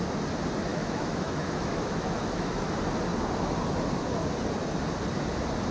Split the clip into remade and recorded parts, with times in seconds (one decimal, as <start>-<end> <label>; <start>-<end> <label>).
0.0-0.7 recorded; 0.7-2.7 remade; 2.7-5.7 recorded